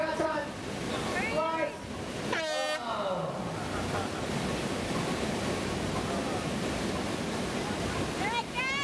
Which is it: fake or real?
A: real